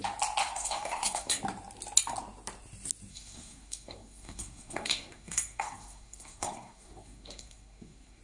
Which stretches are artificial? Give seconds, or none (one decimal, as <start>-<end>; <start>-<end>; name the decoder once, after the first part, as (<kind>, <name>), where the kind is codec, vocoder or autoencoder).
0.4-1.4 (codec, SNAC); 3.1-8.2